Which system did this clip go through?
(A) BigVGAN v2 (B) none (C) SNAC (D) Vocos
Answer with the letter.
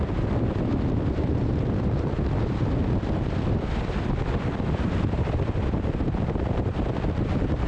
A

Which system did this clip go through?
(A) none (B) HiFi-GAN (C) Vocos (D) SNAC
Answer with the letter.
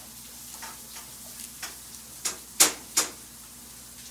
A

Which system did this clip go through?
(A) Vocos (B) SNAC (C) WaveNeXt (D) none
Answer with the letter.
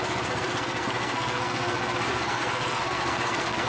B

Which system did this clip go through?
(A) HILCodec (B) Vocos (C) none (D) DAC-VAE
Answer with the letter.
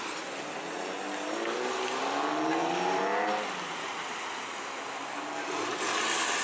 C